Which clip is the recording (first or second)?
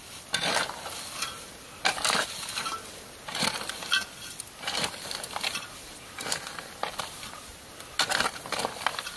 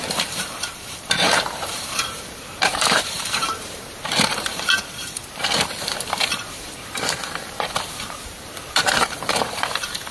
first